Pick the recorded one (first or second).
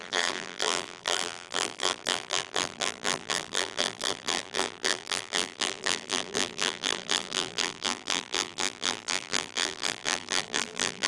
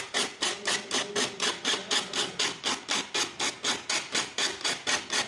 second